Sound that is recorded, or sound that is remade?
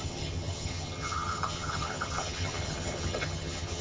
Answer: remade